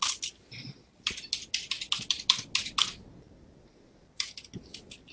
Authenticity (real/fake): real